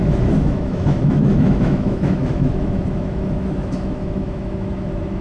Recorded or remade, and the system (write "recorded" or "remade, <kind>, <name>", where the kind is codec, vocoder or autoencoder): remade, autoencoder, DAC-VAE